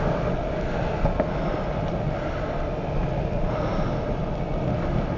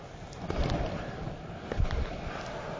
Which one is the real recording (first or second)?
first